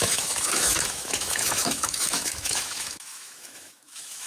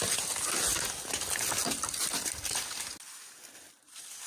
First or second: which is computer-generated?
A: first